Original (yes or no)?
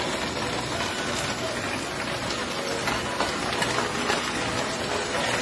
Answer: yes